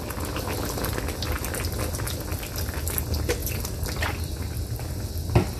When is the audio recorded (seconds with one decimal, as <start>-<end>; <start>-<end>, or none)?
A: 0.0-3.4; 4.9-5.6